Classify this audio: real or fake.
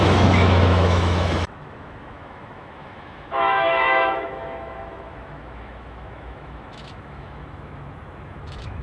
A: fake